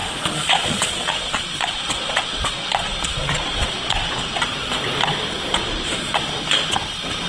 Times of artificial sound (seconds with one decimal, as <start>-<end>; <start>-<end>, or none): 0.0-4.4; 5.6-6.2